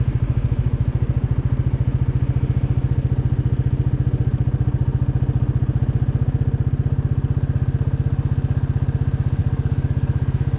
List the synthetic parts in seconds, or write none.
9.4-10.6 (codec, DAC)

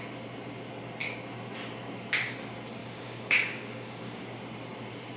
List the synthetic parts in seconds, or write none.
2.8-4.2 (codec, DAC)

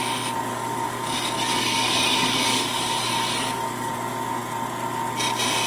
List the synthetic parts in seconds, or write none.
0.5-3.9 (codec, DAC)

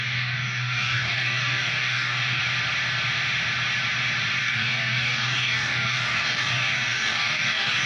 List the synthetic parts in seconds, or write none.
0.0-2.4 (codec, DAC); 4.4-7.9

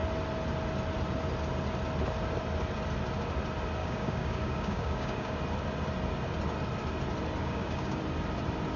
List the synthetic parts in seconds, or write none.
3.8-5.4 (codec, DAC); 7.4-8.0

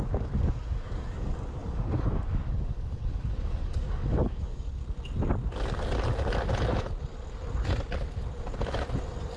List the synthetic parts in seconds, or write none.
0.0-4.8 (codec, DAC)

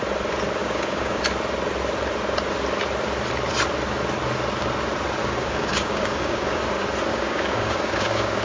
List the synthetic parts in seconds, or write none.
0.6-1.2 (codec, DAC); 5.2-6.6; 7.1-8.4

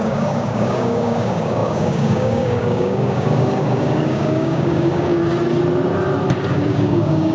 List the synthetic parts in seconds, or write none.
0.0-5.2 (codec, DAC); 6.5-7.3